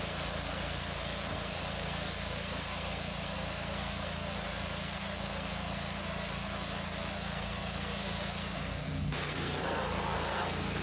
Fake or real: fake